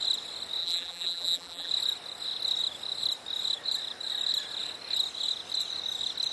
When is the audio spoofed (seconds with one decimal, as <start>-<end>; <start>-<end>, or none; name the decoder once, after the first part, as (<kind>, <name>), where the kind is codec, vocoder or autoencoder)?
0.6-1.7 (vocoder, BigVGAN v2)